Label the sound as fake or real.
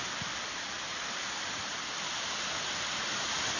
real